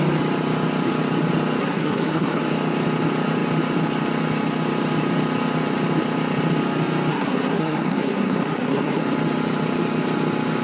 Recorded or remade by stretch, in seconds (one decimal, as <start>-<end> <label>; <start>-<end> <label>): 0.0-1.6 recorded; 1.6-2.4 remade; 2.4-7.1 recorded; 7.1-9.0 remade; 9.0-10.6 recorded